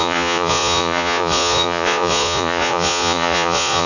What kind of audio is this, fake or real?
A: fake